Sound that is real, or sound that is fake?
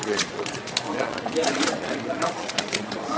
fake